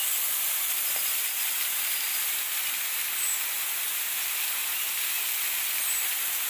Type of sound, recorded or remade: recorded